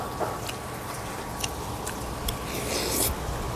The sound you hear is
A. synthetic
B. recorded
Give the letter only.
B